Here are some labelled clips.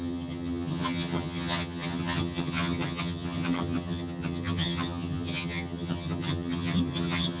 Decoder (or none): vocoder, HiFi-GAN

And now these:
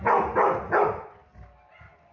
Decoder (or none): none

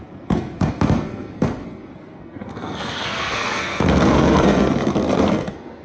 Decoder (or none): codec, SNAC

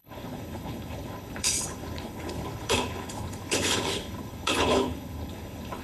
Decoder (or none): codec, HILCodec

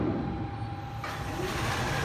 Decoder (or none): none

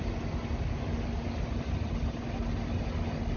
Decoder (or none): none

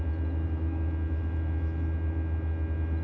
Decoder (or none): vocoder, BigVGAN v2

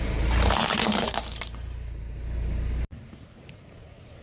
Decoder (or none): vocoder, BigVGAN v2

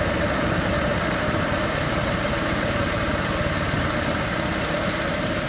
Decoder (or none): vocoder, BigVGAN v2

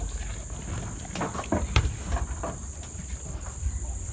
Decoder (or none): none